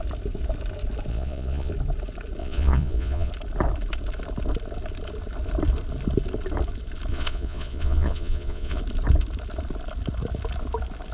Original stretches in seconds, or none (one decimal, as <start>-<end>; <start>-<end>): 0.0-1.1; 1.7-2.4; 3.3-7.1; 8.8-11.1